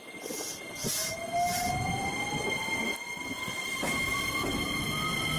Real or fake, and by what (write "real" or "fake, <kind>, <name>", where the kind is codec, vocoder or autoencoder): real